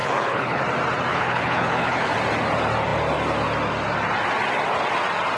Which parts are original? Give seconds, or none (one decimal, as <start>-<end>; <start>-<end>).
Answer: 0.6-1.1; 2.1-5.4